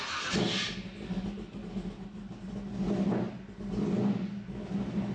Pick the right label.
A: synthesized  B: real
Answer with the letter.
B